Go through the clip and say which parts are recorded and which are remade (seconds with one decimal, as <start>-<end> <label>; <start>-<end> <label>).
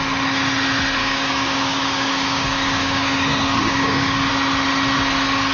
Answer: 0.0-1.0 recorded; 1.0-4.3 remade; 4.3-5.5 recorded